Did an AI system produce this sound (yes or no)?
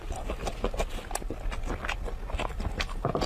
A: no